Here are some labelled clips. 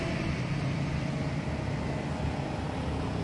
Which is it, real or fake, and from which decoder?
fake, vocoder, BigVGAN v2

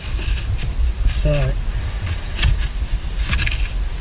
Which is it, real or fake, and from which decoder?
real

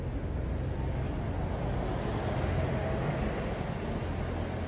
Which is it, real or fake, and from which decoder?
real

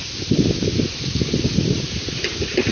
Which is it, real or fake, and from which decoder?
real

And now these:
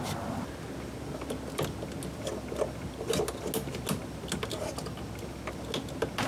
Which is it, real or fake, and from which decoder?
real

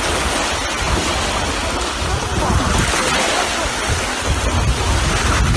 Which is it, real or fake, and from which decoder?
real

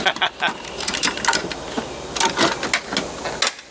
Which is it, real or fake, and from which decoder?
real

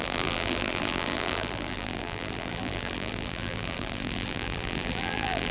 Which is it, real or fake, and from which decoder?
fake, vocoder, BigVGAN v2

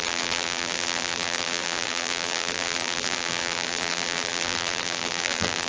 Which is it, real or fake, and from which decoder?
fake, vocoder, BigVGAN v2